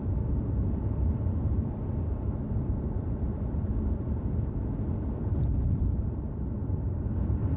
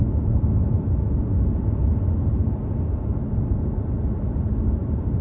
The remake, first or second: first